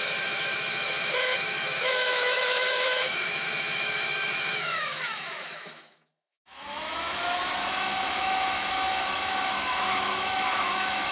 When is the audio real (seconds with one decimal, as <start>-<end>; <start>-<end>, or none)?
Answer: none